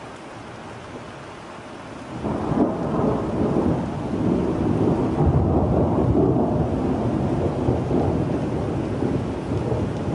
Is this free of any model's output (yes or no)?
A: yes